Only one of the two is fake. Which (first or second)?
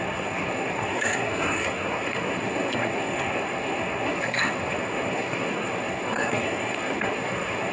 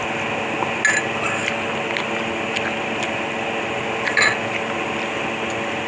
first